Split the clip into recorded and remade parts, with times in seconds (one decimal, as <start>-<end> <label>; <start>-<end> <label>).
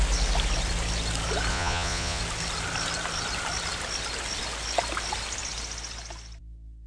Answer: 0.0-1.5 recorded; 1.5-2.2 remade; 2.2-6.9 recorded